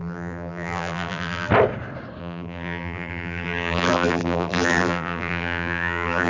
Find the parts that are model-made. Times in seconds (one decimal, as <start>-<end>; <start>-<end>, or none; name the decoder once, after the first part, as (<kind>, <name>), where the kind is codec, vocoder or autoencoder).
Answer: 0.0-1.5 (vocoder, BigVGAN v2); 2.2-6.3